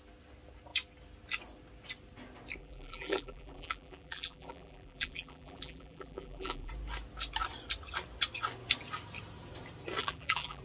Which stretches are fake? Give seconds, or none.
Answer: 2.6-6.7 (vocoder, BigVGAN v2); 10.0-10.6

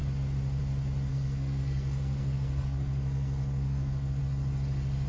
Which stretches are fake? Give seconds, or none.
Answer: 1.1-4.2 (codec, SNAC)

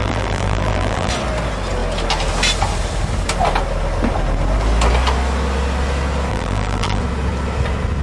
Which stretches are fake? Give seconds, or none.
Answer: 0.0-1.1 (vocoder, BigVGAN v2); 6.3-7.0

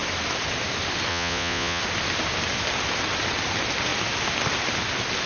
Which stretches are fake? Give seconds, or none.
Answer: 1.1-1.8 (vocoder, Vocos)